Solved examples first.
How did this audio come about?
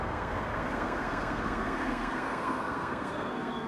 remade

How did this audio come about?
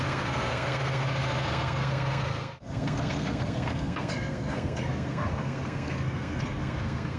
remade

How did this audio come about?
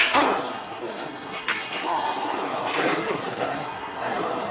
remade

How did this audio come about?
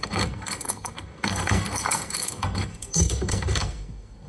remade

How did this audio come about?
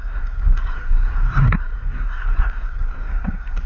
remade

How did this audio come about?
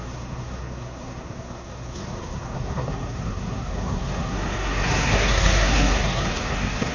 remade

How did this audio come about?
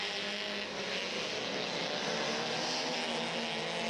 recorded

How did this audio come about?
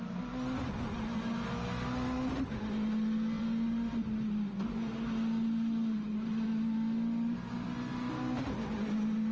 recorded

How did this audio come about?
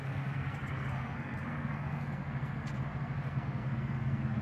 remade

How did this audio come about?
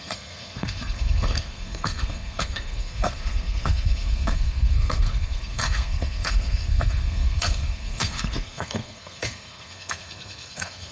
remade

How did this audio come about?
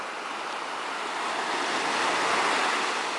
recorded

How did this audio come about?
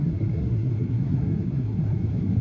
remade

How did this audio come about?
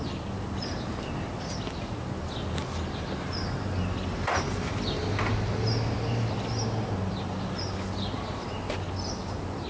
recorded